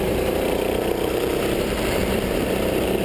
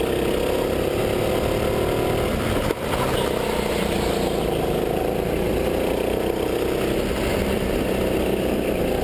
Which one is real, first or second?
second